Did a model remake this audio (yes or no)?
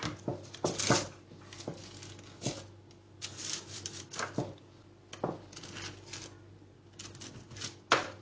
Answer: no